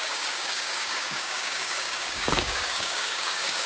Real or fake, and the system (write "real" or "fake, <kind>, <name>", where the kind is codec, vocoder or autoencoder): fake, codec, DAC